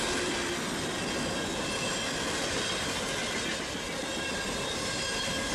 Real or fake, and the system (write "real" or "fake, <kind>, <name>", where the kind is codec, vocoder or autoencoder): real